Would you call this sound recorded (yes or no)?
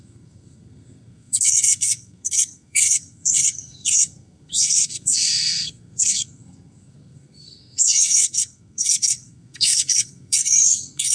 no